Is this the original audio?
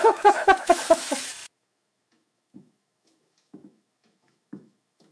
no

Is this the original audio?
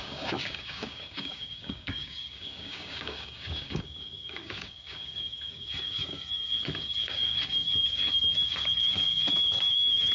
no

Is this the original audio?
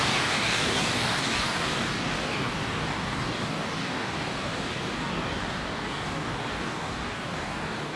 no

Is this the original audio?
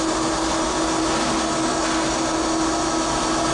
yes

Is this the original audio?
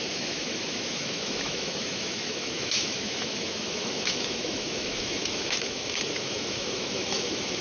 no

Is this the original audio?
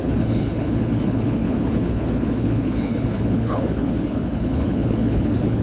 no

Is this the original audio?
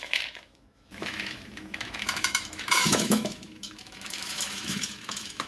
no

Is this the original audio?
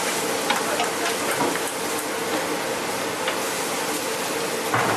yes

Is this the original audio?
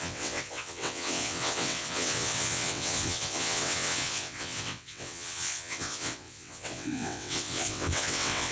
no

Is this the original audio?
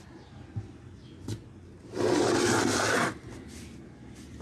yes